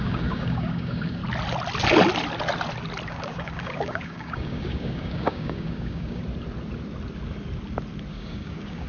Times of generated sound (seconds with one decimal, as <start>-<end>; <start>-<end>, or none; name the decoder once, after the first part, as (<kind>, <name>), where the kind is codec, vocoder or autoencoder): 0.0-1.2 (codec, DAC); 3.1-6.2; 8.1-8.9